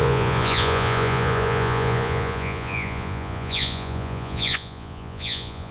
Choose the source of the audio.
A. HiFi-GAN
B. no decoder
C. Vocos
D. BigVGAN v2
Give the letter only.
C